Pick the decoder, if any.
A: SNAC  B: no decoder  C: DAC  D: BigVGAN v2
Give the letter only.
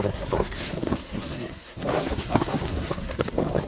A